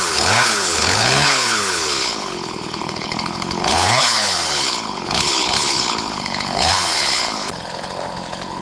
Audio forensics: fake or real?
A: fake